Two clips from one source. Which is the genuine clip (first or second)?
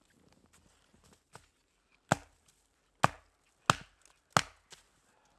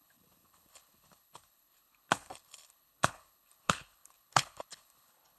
first